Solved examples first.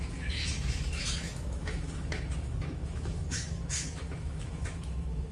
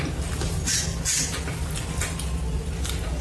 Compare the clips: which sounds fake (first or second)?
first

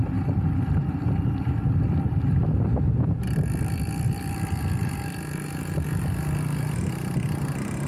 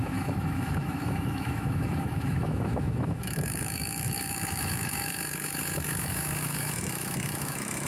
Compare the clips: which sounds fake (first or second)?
second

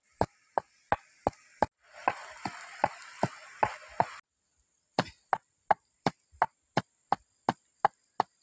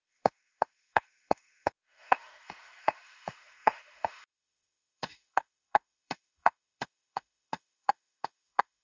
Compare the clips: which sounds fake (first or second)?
second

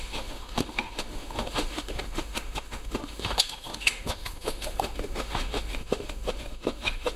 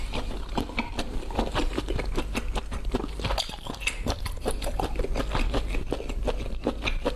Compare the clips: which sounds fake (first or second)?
first